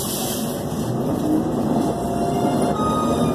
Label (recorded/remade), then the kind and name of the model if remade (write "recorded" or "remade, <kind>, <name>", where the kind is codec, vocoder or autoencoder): recorded